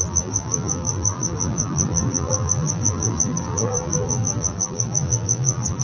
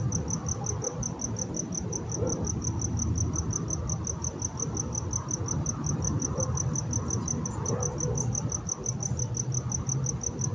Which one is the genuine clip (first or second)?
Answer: second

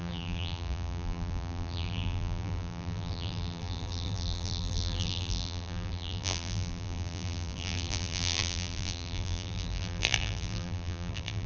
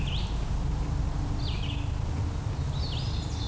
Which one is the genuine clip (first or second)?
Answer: second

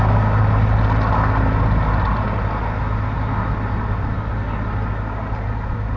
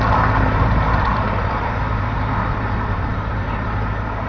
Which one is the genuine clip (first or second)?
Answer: first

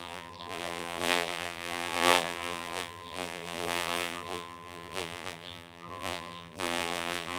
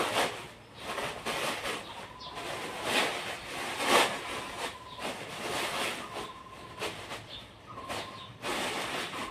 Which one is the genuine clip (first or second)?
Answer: second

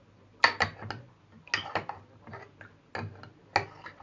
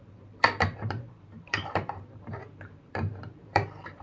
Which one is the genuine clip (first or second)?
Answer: first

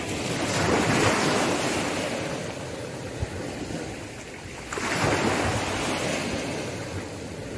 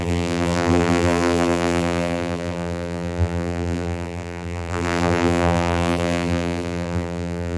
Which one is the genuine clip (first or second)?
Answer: first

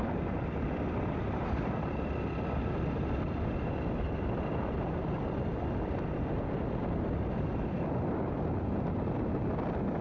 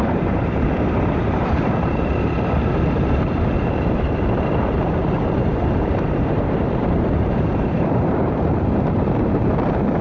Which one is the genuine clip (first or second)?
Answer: first